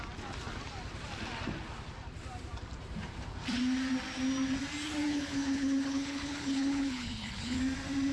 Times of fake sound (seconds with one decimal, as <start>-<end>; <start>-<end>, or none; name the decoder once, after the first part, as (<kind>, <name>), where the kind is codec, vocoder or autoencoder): 5.1-7.6 (codec, HILCodec)